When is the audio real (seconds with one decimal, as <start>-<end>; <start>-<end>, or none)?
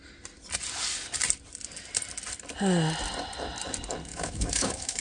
0.0-4.1